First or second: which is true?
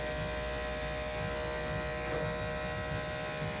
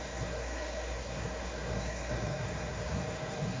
first